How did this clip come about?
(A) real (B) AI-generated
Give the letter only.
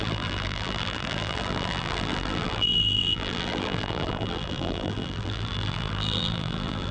B